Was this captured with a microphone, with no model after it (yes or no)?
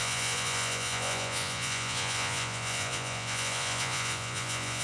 no